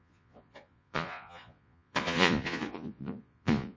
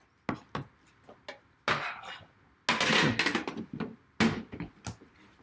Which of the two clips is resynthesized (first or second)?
first